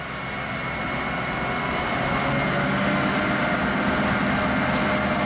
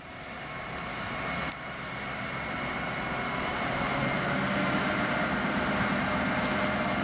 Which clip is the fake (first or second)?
second